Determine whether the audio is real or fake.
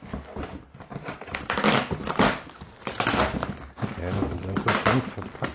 real